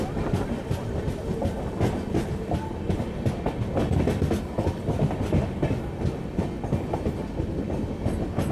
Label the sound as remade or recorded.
recorded